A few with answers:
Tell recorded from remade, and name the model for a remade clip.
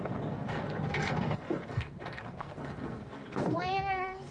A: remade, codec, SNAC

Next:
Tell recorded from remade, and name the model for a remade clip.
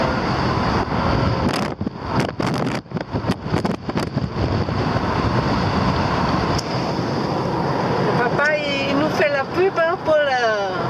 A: recorded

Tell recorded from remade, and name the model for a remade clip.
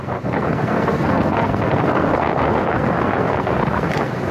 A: remade, codec, SNAC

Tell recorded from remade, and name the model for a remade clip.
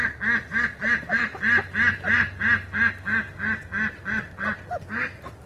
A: recorded